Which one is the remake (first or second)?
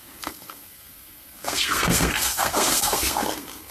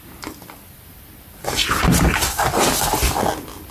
first